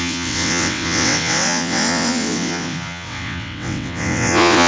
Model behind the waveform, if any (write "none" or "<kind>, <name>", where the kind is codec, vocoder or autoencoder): vocoder, WaveNeXt